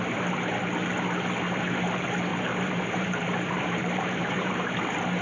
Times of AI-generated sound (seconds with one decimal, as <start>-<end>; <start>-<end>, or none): 2.3-4.8